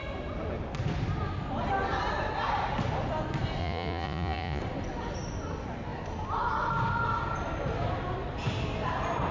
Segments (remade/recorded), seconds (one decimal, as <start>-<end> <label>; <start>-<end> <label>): 0.0-3.6 recorded; 3.6-4.6 remade; 4.6-9.3 recorded